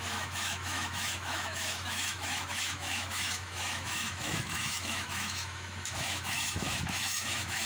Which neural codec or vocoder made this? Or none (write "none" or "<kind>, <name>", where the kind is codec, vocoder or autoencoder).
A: autoencoder, DAC-VAE